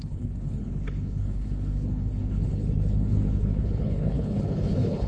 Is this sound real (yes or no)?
no